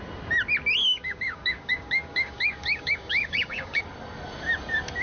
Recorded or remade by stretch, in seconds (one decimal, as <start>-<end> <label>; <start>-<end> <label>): 0.0-0.8 recorded; 0.8-3.8 remade; 3.8-5.0 recorded